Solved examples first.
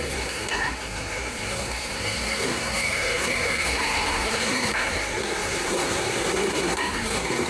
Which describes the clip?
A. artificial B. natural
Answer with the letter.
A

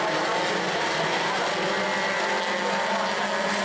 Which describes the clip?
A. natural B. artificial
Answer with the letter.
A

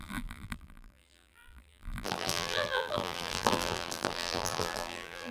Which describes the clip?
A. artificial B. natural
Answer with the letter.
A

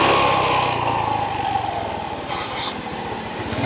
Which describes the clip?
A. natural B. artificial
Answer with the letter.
A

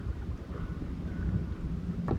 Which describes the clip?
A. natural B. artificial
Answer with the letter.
A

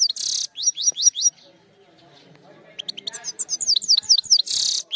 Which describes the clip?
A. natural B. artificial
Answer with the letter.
A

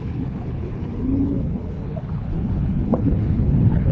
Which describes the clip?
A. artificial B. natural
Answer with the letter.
A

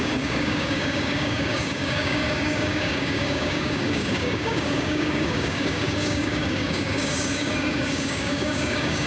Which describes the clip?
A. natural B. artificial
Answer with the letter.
B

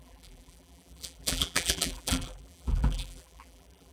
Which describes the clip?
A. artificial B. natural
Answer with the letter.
A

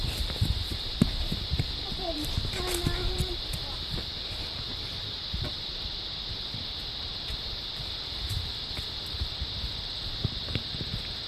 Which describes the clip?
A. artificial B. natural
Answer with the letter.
B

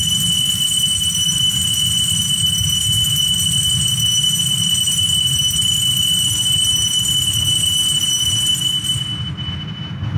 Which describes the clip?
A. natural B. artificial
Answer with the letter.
A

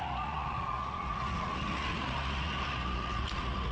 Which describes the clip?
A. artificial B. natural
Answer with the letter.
A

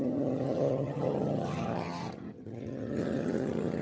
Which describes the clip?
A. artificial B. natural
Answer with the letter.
A